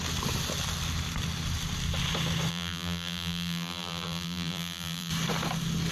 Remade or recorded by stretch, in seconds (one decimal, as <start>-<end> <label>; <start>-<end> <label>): 0.0-2.5 recorded; 2.5-5.1 remade; 5.1-5.9 recorded